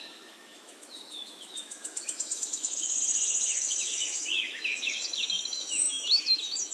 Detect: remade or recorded remade